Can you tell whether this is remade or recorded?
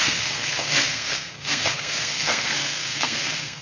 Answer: remade